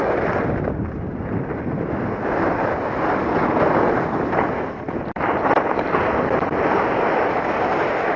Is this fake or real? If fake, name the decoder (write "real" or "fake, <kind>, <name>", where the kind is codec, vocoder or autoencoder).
fake, vocoder, BigVGAN v2